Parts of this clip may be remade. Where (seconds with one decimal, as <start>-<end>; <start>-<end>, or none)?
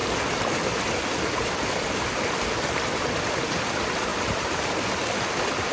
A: 4.1-4.7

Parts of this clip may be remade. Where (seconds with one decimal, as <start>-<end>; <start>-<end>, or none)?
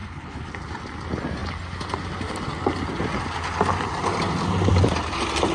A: 0.0-0.5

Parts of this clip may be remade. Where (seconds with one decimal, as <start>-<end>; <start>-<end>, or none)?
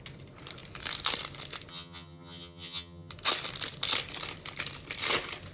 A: 1.7-3.1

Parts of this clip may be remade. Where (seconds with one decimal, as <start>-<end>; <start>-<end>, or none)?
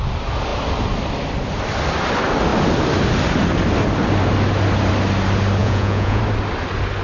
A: 5.6-6.2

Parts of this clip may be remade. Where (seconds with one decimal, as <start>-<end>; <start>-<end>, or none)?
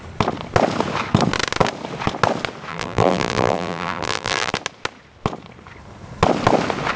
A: 2.7-4.5